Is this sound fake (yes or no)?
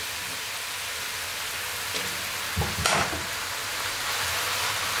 no